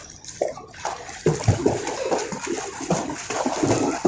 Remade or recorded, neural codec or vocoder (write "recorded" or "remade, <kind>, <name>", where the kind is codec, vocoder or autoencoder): recorded